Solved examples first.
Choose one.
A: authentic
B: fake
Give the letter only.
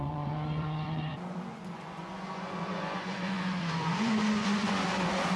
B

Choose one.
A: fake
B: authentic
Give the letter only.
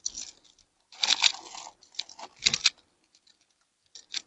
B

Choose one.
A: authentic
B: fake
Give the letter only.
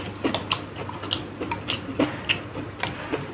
A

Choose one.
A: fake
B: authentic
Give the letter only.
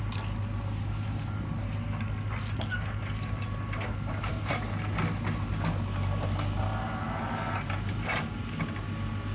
B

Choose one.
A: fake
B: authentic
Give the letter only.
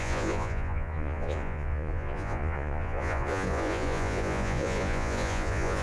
A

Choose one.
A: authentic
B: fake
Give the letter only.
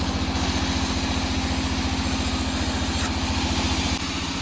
A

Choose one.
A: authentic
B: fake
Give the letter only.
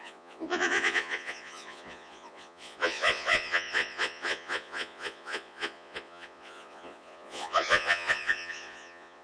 B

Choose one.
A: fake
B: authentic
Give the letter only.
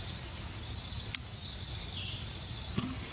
B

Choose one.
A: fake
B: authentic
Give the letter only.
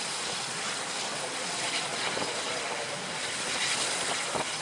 B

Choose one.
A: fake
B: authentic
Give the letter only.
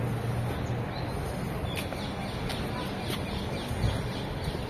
B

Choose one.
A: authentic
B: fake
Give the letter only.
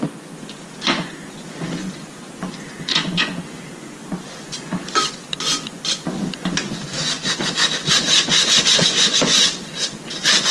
B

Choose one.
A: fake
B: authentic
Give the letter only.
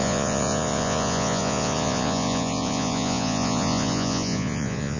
A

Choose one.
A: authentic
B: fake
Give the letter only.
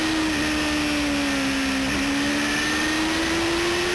A